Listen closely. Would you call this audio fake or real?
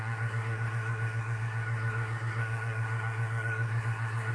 fake